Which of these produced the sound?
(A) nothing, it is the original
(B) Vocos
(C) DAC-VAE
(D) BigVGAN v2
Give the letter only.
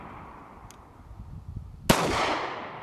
A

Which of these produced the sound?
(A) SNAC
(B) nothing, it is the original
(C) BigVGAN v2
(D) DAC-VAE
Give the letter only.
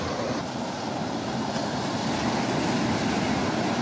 B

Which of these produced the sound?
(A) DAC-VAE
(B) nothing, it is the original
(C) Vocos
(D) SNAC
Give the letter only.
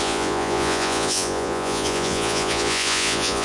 C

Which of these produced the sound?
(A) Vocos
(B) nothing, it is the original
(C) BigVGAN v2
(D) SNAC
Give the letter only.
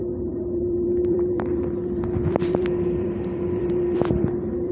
C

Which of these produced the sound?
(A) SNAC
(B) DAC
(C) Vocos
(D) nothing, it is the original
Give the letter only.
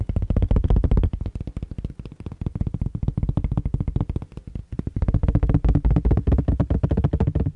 D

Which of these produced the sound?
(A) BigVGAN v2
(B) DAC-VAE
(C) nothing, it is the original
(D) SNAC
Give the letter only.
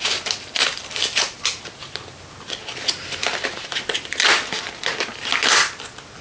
C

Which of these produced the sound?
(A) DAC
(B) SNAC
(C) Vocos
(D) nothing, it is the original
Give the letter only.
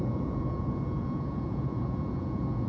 C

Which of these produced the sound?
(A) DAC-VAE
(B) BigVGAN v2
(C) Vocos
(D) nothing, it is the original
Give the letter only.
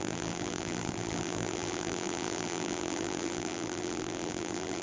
B